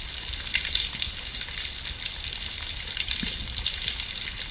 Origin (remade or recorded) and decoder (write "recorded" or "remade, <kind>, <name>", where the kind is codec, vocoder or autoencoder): remade, vocoder, BigVGAN v2